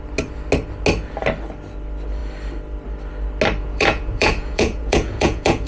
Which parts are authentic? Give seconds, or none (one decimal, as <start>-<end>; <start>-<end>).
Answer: 0.0-3.6